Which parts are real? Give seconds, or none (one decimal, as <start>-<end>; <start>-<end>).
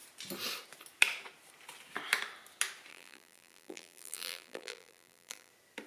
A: 0.0-2.9; 5.5-5.9